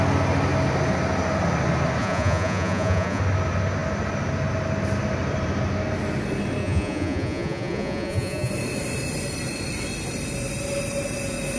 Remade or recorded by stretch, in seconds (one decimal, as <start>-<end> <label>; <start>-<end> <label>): 0.0-2.0 recorded; 2.0-3.2 remade; 3.2-6.6 recorded; 6.6-8.5 remade; 8.5-11.6 recorded